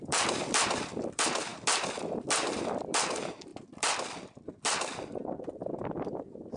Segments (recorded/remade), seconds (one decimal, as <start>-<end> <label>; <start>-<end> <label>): 0.0-1.5 remade; 1.5-2.0 recorded; 2.0-3.5 remade; 3.5-6.1 recorded; 6.1-6.6 remade